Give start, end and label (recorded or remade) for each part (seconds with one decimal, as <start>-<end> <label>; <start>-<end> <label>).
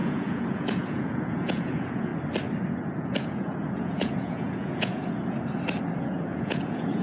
0.0-2.1 remade; 2.1-3.0 recorded; 3.0-5.0 remade; 5.0-6.0 recorded; 6.0-7.0 remade